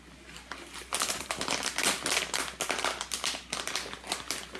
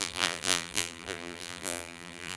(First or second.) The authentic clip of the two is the first